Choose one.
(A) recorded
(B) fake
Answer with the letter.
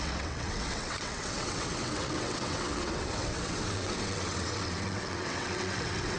B